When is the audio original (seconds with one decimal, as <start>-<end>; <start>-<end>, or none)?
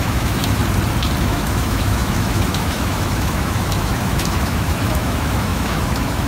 0.6-1.2